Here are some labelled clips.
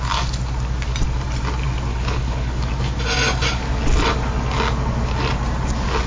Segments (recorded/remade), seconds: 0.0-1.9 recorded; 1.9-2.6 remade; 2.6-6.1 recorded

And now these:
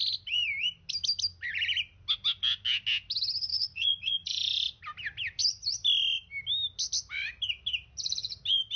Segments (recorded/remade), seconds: 0.0-3.5 recorded; 3.5-4.8 remade; 4.8-8.8 recorded